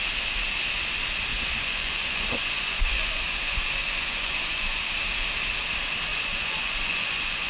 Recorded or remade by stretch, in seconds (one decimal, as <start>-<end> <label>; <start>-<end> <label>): 0.0-1.3 recorded; 1.3-4.8 remade; 4.8-6.1 recorded; 6.1-7.5 remade